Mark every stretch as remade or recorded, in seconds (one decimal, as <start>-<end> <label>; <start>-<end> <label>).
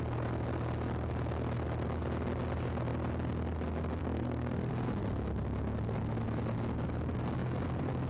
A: 0.0-4.0 recorded; 4.0-4.7 remade; 4.7-8.1 recorded